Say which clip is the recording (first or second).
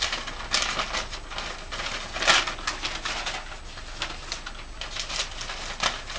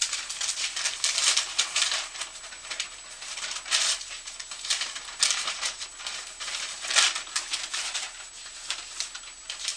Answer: first